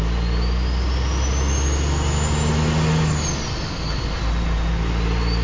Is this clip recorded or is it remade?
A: recorded